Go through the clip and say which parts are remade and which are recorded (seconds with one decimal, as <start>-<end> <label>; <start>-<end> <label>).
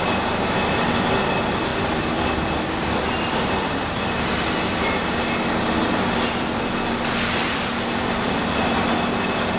0.0-1.7 recorded; 1.7-4.0 remade; 4.0-9.6 recorded